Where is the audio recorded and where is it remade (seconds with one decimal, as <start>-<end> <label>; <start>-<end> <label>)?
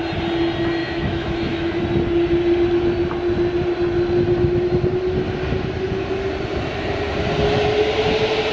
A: 0.0-0.8 recorded; 0.8-1.8 remade; 1.8-8.5 recorded